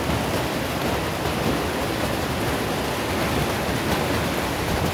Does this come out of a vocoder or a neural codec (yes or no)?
no